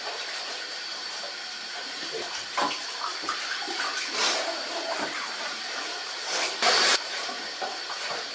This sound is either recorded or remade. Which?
remade